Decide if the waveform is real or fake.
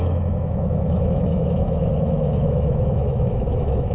fake